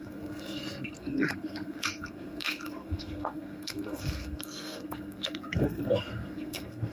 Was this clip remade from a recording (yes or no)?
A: yes